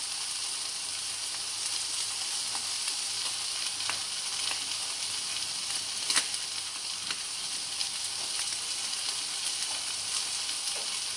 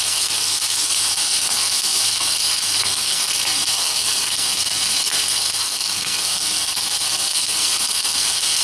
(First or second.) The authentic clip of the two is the first